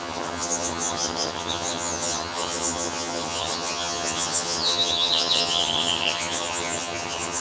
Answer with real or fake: fake